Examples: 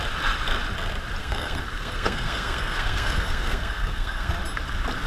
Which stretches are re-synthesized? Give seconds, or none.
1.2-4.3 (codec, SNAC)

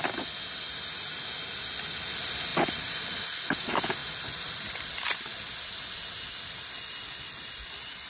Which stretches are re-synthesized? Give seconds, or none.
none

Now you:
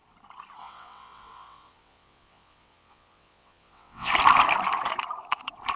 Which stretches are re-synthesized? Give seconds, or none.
0.6-4.1 (vocoder, WaveNeXt)

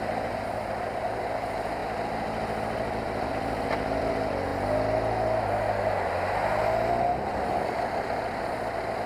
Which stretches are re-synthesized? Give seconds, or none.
none

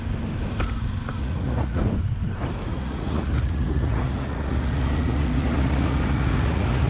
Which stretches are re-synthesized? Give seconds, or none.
1.2-1.8 (vocoder, Vocos); 2.7-6.9

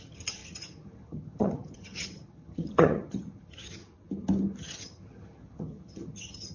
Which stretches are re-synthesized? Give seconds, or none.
0.0-3.8 (vocoder, HiFi-GAN); 4.6-6.5